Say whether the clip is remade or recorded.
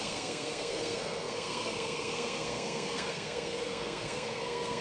remade